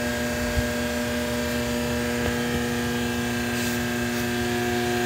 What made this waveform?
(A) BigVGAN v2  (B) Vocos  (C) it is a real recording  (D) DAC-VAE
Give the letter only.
C